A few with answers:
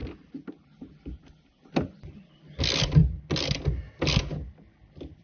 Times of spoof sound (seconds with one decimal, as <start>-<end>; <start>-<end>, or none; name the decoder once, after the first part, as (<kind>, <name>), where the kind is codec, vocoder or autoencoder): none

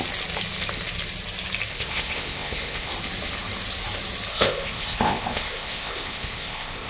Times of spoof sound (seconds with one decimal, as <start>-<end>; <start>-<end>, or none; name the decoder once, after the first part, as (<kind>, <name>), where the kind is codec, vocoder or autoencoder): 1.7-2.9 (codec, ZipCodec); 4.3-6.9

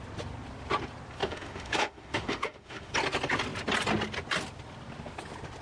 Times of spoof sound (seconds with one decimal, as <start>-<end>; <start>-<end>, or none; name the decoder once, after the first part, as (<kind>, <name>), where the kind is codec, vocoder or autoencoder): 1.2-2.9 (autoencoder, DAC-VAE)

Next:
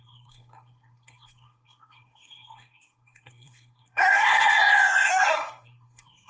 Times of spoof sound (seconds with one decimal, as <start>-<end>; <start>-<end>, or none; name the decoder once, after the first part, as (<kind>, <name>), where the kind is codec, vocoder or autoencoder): 0.0-6.3 (codec, SNAC)

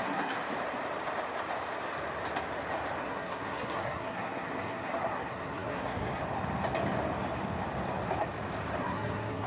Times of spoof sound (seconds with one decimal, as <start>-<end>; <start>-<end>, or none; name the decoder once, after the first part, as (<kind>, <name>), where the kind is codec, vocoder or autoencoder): 0.0-0.4 (codec, SNAC); 3.0-6.2; 8.8-9.5